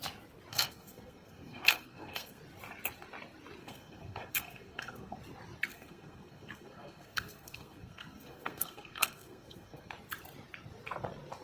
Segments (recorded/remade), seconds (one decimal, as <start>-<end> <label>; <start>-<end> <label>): 0.0-0.5 recorded; 0.5-2.4 remade; 2.4-3.6 recorded; 3.6-5.2 remade; 5.2-5.7 recorded; 5.7-9.9 remade; 9.9-11.4 recorded

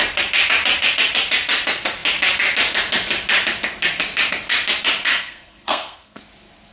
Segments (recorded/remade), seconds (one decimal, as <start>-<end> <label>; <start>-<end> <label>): 0.0-5.1 recorded; 5.1-6.2 remade; 6.2-6.7 recorded

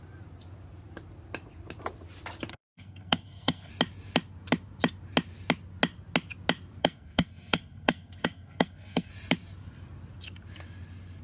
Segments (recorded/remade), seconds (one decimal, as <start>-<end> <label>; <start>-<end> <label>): 0.0-2.5 recorded; 2.5-3.7 remade; 3.7-6.8 recorded; 6.8-9.1 remade; 9.1-11.2 recorded

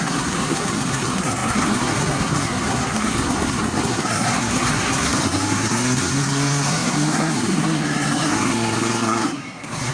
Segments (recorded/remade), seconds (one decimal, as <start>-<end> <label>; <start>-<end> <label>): 0.0-9.9 remade

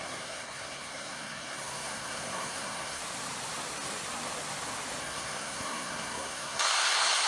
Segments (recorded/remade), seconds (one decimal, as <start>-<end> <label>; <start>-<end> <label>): 0.0-3.0 remade; 3.0-5.0 recorded; 5.0-7.3 remade

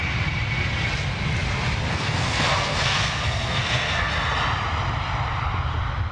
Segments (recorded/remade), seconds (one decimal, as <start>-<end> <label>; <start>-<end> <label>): 0.0-1.9 recorded; 1.9-4.1 remade; 4.1-6.1 recorded

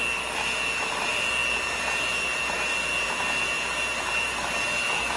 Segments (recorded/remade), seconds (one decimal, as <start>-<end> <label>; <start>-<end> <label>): 0.0-5.2 recorded

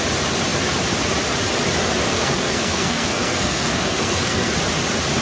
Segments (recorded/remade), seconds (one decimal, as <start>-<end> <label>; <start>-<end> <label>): 0.0-2.1 recorded; 2.1-4.5 remade; 4.5-5.2 recorded